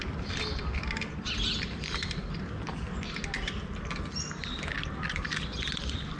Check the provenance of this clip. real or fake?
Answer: real